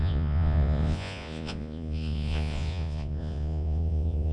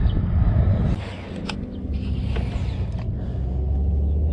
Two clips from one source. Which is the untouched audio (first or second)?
second